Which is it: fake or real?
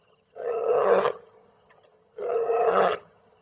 fake